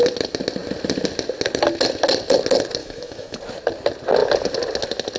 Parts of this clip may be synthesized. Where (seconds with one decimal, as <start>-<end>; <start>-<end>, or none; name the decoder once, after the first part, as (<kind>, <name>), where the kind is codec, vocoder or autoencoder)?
2.8-3.4 (autoencoder, DAC-VAE)